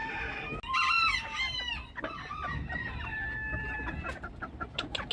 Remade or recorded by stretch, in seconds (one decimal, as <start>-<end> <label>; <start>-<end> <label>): 0.0-5.1 recorded